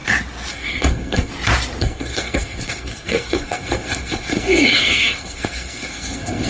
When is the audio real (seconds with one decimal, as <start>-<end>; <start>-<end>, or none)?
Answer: 0.0-0.5; 1.3-1.8